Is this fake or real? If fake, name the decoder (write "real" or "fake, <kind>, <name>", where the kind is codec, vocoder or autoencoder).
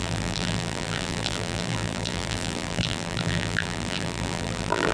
fake, vocoder, BigVGAN v2